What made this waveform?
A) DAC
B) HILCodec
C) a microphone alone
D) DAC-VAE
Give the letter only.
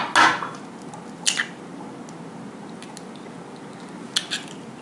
C